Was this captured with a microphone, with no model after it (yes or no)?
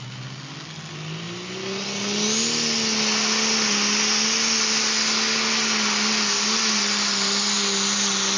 yes